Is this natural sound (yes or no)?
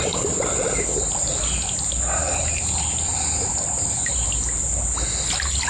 yes